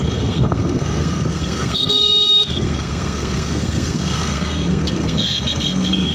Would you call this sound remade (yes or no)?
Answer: yes